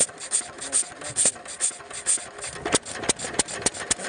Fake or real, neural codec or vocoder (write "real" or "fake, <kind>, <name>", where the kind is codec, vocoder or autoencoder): real